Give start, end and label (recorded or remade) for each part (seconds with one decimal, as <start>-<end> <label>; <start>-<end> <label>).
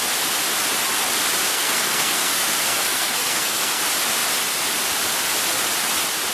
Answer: 0.0-1.5 recorded; 1.5-3.8 remade; 3.8-6.3 recorded